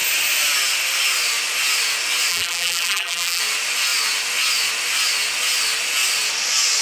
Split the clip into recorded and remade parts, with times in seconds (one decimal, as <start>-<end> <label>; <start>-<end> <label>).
0.0-2.3 recorded; 2.3-3.4 remade; 3.4-6.8 recorded